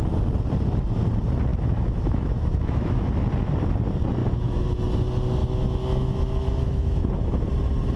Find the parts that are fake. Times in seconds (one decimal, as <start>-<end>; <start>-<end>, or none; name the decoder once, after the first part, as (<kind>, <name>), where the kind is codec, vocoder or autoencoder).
1.5-3.1 (autoencoder, DAC-VAE); 4.2-4.8; 5.4-7.3